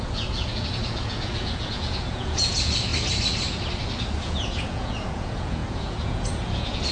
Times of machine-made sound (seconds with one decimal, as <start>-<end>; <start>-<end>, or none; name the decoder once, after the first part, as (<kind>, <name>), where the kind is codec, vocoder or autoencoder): 0.0-2.9 (vocoder, Vocos); 4.2-6.9